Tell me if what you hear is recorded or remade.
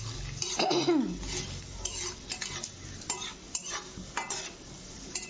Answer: recorded